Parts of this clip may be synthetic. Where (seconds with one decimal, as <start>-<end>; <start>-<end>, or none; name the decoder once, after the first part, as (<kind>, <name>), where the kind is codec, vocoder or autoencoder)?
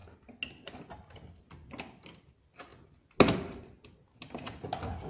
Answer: none